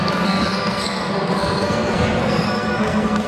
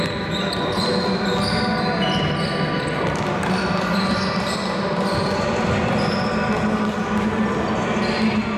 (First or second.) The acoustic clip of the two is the second